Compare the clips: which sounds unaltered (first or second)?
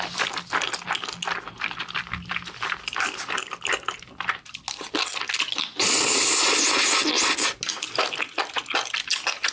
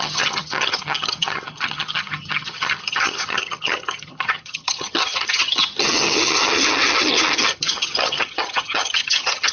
first